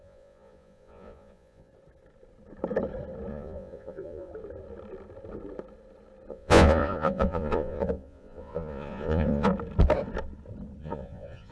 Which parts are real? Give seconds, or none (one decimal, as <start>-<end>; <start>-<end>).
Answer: 1.7-3.3; 4.3-6.3; 9.5-10.8